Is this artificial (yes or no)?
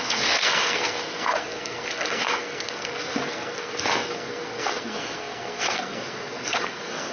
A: yes